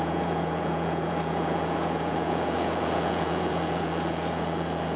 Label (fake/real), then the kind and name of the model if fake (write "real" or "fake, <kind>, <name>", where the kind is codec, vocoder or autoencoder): fake, vocoder, Vocos